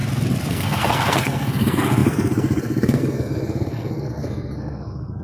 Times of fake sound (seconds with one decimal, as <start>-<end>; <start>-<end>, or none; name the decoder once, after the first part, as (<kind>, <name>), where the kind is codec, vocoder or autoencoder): 0.5-5.2 (codec, SNAC)